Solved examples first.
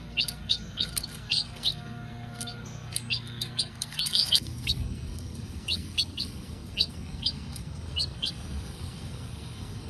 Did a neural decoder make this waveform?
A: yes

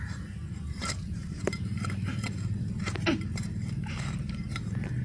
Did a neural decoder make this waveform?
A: yes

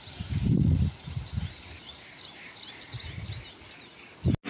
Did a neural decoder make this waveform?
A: no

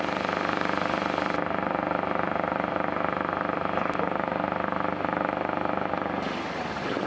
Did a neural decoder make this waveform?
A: no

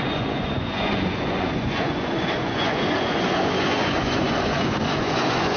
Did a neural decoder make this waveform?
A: yes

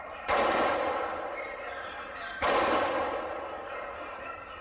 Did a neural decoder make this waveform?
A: no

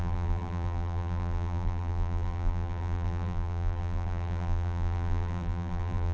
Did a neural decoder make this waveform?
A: yes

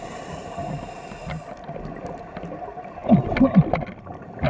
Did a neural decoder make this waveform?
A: no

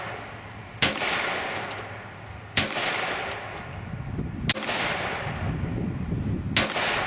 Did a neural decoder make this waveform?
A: no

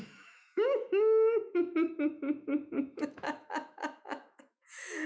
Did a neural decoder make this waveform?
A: yes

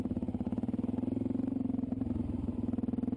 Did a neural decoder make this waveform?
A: no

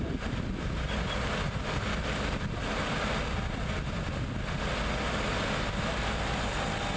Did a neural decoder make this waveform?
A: no